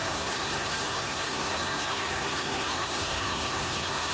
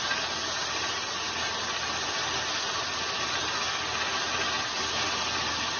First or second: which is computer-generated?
first